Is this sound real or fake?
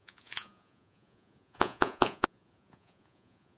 fake